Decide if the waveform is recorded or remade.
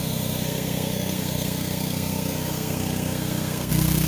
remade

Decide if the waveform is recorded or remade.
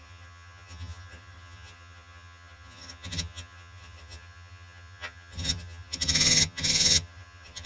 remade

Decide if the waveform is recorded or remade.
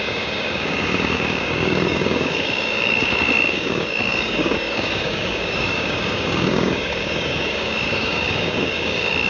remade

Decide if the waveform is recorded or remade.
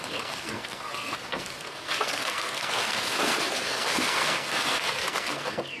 remade